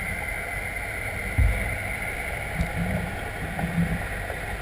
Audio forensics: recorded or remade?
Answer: recorded